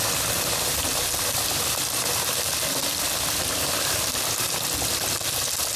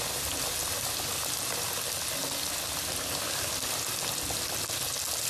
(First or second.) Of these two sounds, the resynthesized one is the first